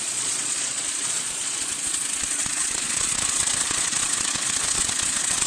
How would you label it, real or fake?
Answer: fake